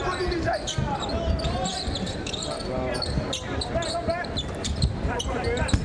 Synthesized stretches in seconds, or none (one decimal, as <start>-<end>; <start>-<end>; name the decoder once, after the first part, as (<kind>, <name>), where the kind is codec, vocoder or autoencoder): none